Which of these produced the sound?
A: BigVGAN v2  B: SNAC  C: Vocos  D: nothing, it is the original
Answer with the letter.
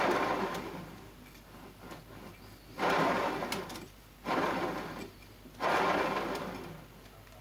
A